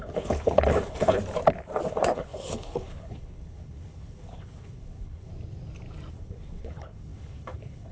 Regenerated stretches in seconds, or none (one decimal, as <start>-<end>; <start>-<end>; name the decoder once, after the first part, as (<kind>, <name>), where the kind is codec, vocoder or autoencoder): 0.0-1.2 (codec, HILCodec); 1.9-5.3; 6.1-7.9